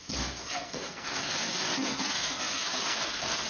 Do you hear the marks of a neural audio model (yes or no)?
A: yes